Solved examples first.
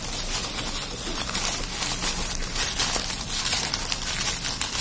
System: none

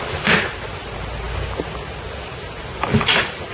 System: none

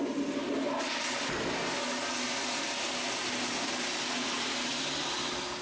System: none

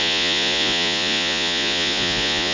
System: vocoder, Vocos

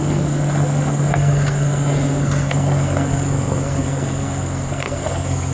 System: codec, SNAC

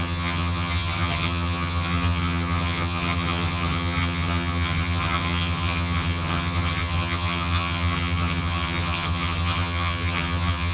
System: vocoder, HiFi-GAN